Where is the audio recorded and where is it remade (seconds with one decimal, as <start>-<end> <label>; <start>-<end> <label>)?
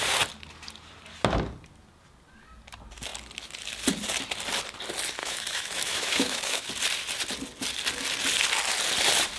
0.0-5.2 recorded; 5.2-6.7 remade; 6.7-9.4 recorded